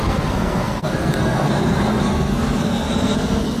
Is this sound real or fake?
fake